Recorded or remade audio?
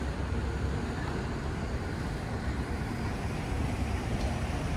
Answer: recorded